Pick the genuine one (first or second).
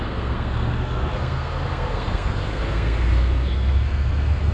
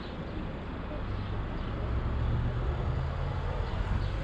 second